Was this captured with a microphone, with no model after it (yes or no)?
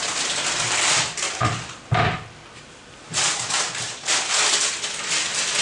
yes